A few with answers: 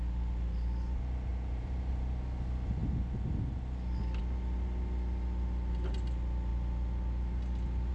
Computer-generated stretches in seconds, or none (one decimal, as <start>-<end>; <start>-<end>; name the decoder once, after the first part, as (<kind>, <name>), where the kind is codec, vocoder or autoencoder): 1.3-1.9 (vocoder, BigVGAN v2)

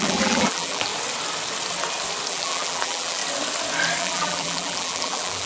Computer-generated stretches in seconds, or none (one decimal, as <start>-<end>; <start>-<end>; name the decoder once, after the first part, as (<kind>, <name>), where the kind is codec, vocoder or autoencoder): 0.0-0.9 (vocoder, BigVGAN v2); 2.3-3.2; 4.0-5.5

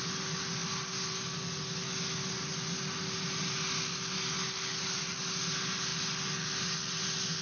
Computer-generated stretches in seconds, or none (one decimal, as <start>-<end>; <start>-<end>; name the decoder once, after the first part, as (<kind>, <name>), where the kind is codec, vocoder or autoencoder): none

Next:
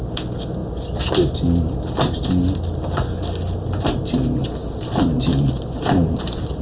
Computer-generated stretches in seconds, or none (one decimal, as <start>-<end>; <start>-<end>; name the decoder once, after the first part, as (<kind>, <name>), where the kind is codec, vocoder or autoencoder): 4.6-6.6 (vocoder, BigVGAN v2)

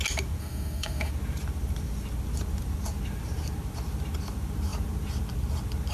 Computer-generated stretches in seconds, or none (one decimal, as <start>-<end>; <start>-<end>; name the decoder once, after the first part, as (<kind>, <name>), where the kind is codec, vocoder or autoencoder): 0.4-1.1 (autoencoder, DAC-VAE)

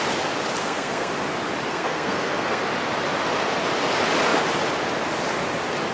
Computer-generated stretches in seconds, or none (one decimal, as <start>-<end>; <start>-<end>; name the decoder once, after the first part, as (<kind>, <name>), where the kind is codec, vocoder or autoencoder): 0.6-1.1 (codec, SNAC); 1.7-2.6